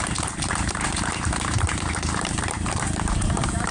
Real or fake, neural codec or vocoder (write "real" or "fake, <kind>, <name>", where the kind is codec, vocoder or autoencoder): fake, vocoder, BigVGAN v2